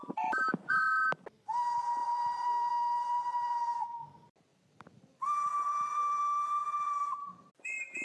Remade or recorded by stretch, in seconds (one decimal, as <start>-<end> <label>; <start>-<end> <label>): 0.0-0.8 remade; 0.8-6.6 recorded; 6.6-7.5 remade; 7.5-8.0 recorded